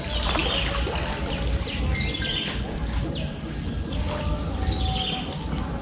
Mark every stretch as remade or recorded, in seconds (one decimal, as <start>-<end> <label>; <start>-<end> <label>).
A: 0.0-5.8 recorded